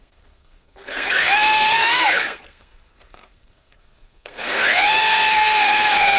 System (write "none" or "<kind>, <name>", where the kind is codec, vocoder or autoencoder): codec, SNAC